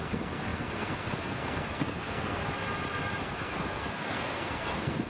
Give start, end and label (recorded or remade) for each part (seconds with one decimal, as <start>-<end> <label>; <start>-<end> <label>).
0.0-2.4 remade; 2.4-3.2 recorded; 3.2-5.1 remade